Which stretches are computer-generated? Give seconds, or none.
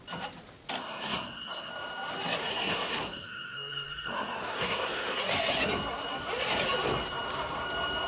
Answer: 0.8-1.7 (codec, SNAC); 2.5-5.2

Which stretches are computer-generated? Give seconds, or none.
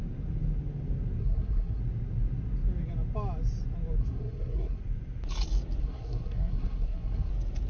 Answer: 1.2-1.8 (codec, SNAC); 4.0-4.8; 5.8-7.3